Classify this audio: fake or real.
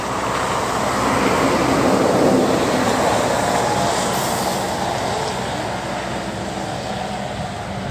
real